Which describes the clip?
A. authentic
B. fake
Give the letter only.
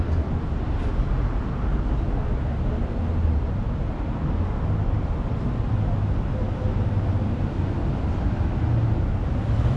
A